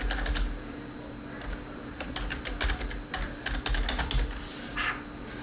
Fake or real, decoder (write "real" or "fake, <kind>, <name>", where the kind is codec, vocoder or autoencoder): real